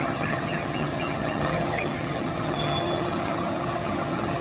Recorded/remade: remade